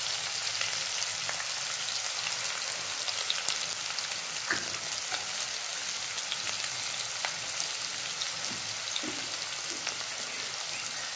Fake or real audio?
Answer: real